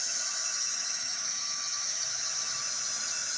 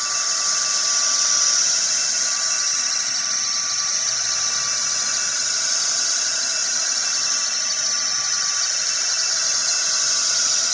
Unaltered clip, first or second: second